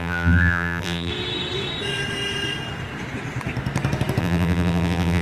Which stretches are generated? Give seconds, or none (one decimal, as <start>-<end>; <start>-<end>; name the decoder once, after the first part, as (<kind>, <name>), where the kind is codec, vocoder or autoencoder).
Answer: 0.0-1.1 (vocoder, BigVGAN v2); 4.2-5.2